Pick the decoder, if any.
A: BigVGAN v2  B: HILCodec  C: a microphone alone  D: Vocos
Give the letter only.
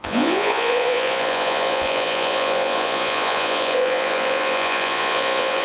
D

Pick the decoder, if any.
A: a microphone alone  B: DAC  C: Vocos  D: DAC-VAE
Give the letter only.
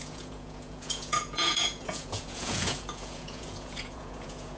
C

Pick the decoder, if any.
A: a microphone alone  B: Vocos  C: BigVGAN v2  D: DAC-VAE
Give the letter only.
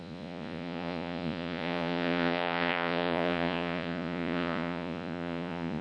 B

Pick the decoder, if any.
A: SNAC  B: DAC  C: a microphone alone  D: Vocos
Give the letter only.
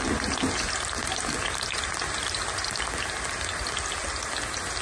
C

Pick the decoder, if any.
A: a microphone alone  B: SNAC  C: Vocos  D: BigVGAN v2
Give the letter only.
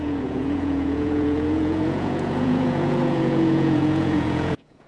C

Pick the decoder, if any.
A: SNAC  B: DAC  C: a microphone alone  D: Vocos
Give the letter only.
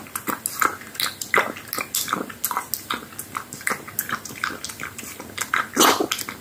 C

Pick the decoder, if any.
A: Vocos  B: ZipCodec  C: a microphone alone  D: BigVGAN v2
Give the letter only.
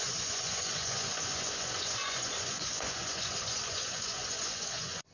A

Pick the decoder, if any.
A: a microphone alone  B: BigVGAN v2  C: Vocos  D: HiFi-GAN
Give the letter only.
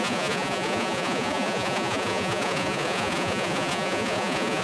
C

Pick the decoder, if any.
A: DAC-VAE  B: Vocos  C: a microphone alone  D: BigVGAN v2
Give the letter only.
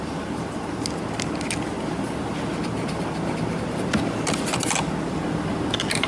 C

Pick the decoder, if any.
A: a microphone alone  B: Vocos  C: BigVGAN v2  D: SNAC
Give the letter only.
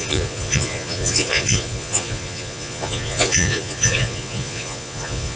B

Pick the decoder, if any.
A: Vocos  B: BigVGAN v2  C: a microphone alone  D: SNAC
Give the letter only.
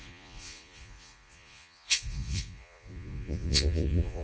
A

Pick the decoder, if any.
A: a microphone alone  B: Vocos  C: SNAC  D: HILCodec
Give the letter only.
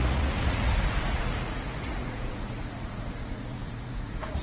B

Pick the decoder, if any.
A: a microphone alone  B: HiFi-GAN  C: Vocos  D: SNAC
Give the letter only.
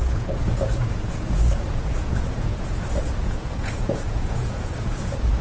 C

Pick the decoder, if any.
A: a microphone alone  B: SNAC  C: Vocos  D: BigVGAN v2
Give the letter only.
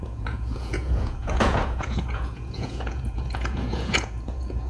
C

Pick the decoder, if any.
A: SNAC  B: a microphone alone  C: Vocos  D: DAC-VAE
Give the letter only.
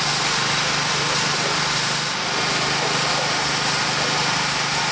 B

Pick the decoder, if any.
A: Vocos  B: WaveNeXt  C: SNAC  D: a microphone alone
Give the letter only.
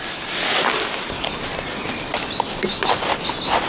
D